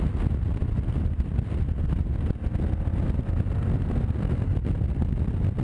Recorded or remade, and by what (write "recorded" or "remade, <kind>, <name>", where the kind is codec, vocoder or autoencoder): recorded